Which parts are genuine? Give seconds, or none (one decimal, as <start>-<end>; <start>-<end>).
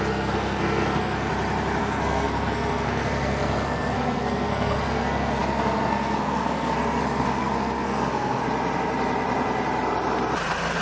1.3-1.8; 8.4-10.8